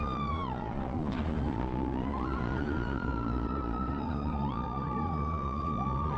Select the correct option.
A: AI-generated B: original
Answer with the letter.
A